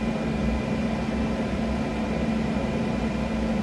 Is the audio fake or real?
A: real